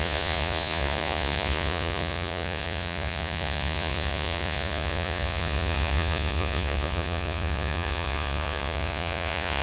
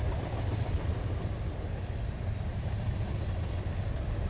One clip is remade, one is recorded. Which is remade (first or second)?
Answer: first